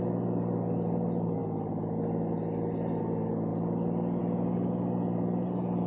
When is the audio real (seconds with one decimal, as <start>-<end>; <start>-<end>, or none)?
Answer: 0.0-5.9